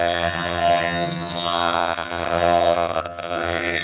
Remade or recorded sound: remade